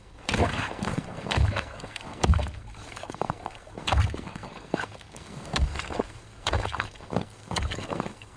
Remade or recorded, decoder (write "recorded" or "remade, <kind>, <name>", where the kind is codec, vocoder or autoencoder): remade, codec, SNAC